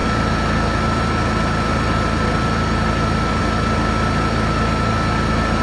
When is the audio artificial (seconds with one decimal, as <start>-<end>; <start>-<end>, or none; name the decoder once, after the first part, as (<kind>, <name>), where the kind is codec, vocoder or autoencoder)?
none